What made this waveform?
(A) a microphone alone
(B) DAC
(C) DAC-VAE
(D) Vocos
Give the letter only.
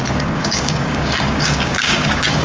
B